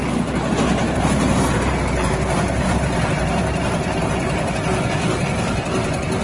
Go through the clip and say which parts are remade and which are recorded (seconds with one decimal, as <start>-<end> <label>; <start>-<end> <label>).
0.0-0.8 recorded; 0.8-4.5 remade; 4.5-6.2 recorded

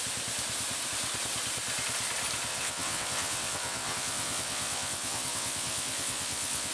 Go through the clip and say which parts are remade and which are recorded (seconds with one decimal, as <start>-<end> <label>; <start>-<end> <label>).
0.0-2.5 recorded; 2.5-6.7 remade

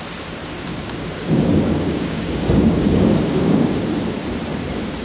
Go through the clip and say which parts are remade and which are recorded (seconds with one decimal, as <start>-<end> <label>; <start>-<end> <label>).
0.0-0.7 recorded; 0.7-3.7 remade; 3.7-5.0 recorded

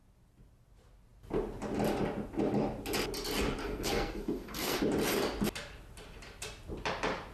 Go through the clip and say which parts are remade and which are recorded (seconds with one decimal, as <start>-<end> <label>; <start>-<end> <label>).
0.0-3.6 recorded; 3.6-4.8 remade; 4.8-7.3 recorded

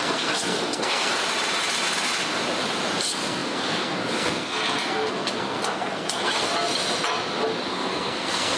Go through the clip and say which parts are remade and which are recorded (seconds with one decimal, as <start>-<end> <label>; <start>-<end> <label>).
0.0-1.1 remade; 1.1-3.0 recorded; 3.0-6.5 remade; 6.5-7.7 recorded; 7.7-8.6 remade

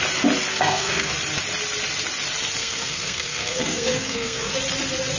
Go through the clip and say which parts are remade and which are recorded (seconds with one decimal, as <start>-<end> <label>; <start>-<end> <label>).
0.0-0.5 recorded; 0.5-1.1 remade; 1.1-2.6 recorded; 2.6-4.5 remade; 4.5-5.2 recorded

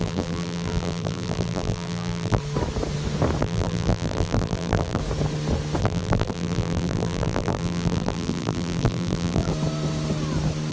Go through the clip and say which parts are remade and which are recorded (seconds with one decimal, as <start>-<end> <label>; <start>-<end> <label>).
0.0-2.4 remade; 2.4-3.4 recorded; 3.4-5.0 remade; 5.0-5.8 recorded; 5.8-9.5 remade; 9.5-10.7 recorded